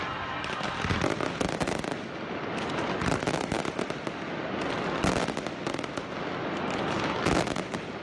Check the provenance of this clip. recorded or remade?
recorded